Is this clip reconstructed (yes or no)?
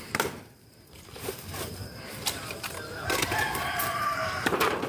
yes